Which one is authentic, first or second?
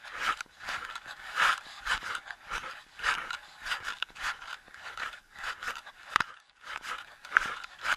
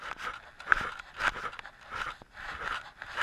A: second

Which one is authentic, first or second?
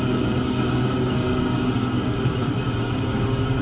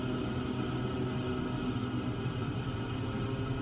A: second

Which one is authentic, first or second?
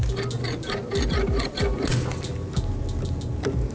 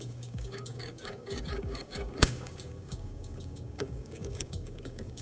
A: first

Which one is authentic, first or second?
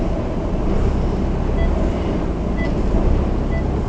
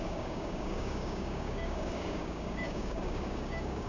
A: first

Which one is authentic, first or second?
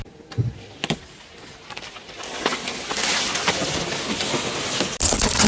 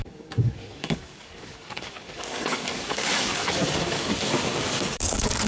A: first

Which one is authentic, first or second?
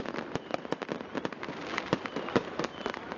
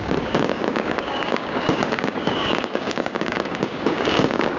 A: first